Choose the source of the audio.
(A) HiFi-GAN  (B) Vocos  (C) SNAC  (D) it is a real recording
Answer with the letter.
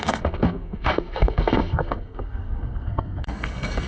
C